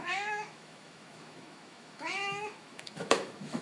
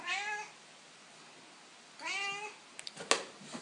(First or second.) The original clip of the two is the second